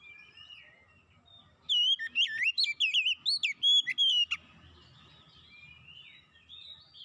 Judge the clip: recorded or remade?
recorded